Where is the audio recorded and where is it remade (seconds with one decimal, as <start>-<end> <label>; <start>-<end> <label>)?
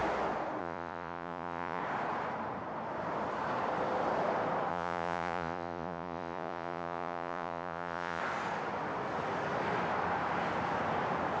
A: 0.0-0.6 recorded; 0.6-1.8 remade; 1.8-4.7 recorded; 4.7-8.2 remade; 8.2-11.4 recorded